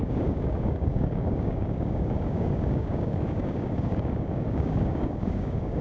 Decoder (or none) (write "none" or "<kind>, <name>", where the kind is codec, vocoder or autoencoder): codec, DAC